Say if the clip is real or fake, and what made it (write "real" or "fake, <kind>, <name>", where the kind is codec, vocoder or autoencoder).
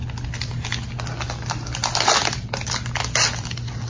real